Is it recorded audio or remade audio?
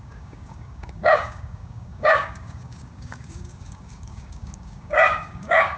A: remade